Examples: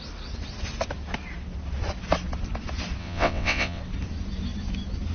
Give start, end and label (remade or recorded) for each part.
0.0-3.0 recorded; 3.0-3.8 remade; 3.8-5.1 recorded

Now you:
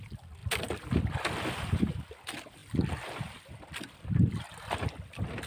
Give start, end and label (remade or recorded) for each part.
0.0-0.4 recorded; 0.4-1.0 remade; 1.0-5.5 recorded

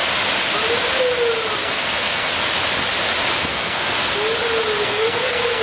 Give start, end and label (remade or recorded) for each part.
0.0-1.6 recorded; 1.6-2.3 remade; 2.3-3.5 recorded; 3.5-4.1 remade; 4.1-4.8 recorded; 4.8-5.6 remade

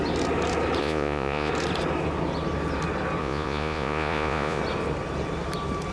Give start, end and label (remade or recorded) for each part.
0.0-0.8 recorded; 0.8-1.5 remade; 1.5-3.2 recorded; 3.2-4.6 remade; 4.6-5.9 recorded

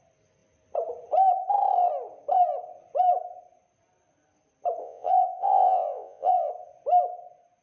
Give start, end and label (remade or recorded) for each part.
0.0-4.8 recorded; 4.8-6.5 remade; 6.5-7.6 recorded

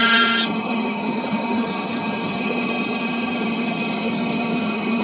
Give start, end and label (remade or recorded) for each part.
0.0-5.0 remade

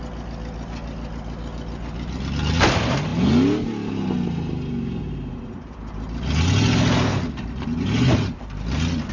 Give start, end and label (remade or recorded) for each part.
0.0-9.1 recorded